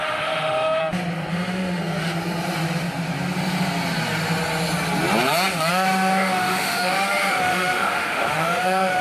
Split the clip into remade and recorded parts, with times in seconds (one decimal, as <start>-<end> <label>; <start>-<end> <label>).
0.0-0.8 remade; 0.8-1.3 recorded; 1.3-1.8 remade; 1.8-5.7 recorded; 5.7-9.0 remade